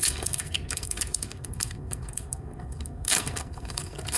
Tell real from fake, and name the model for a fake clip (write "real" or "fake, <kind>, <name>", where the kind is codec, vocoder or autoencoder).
fake, codec, SNAC